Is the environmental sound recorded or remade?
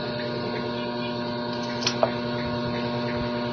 recorded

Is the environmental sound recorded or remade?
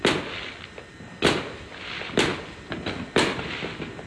recorded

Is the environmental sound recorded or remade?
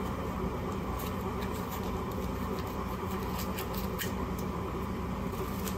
remade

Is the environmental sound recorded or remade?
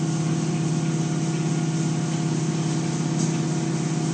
recorded